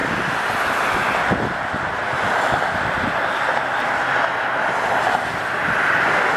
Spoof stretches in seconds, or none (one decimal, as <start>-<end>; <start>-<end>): none